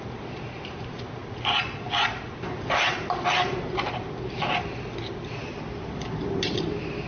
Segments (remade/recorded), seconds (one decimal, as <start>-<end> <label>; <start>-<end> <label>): 0.0-7.1 recorded